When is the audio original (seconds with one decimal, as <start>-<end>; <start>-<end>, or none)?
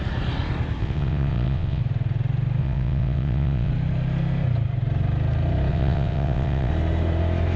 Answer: 0.0-0.8; 1.8-2.6; 3.7-5.7; 6.7-7.6